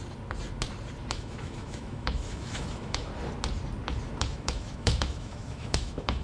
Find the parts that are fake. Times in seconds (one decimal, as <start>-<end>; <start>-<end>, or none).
1.1-3.1; 4.2-6.2